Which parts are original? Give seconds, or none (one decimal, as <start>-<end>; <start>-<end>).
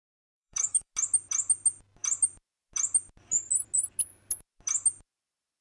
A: 0.9-5.6